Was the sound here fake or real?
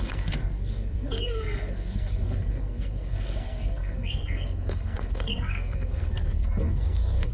fake